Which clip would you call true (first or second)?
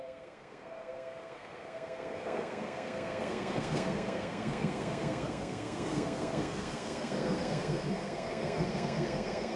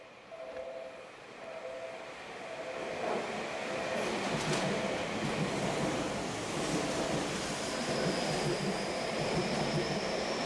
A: second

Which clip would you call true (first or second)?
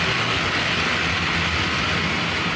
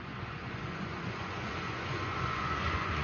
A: first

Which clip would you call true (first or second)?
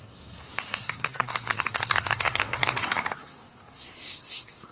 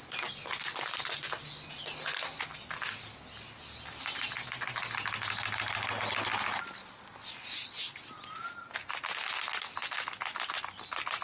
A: second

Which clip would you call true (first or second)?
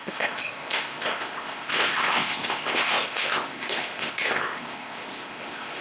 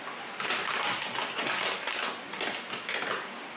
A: second